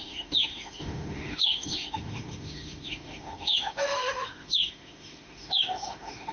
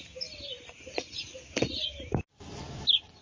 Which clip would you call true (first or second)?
second